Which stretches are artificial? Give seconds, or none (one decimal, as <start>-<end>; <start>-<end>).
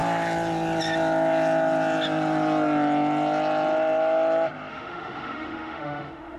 4.7-6.4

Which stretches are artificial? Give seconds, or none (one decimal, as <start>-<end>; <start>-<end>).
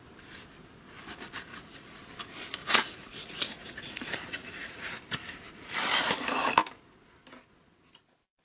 1.5-2.0; 2.6-4.9